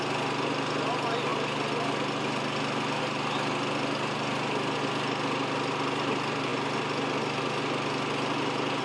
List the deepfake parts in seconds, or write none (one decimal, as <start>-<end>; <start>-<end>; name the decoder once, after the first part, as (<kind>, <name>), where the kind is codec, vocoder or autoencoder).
none